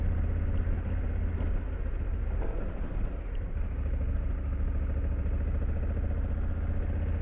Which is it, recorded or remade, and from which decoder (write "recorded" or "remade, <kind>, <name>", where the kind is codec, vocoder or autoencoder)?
recorded